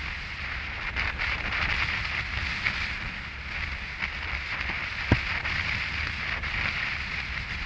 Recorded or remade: recorded